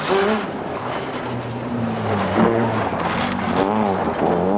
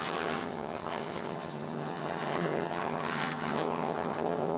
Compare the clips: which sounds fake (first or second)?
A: second